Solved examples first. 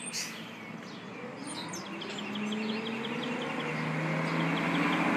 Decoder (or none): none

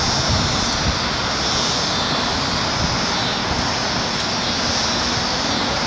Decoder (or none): none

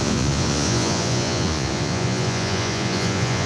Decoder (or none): vocoder, Vocos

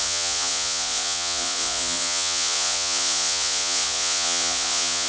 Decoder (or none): vocoder, Vocos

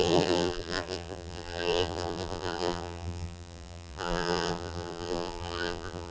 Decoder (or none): vocoder, BigVGAN v2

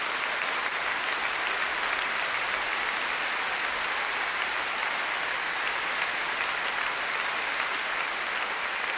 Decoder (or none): none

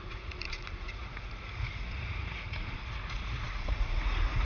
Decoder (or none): vocoder, Vocos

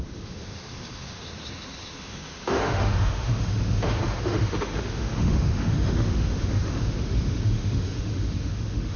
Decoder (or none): autoencoder, DAC-VAE